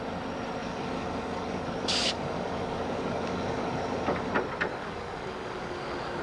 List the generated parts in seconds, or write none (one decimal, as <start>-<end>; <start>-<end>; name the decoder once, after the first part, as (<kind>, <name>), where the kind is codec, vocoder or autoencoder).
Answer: 0.6-4.3 (codec, DAC); 4.7-6.2